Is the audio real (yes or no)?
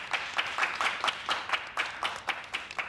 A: yes